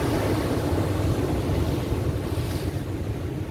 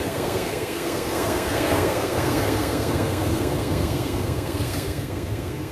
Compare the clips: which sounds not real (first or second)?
second